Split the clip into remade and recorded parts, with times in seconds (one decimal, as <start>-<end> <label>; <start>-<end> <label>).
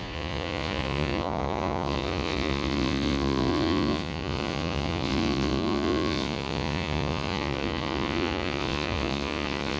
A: 0.0-9.8 remade